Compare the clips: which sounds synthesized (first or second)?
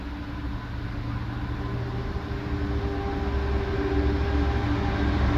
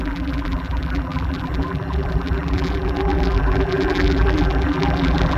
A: second